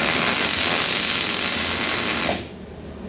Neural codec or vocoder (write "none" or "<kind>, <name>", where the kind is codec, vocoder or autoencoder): none